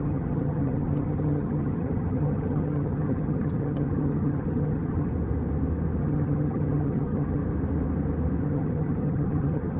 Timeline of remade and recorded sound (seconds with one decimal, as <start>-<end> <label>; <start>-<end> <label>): 0.0-5.1 remade; 5.1-6.0 recorded; 6.0-7.4 remade; 7.4-8.4 recorded; 8.4-9.8 remade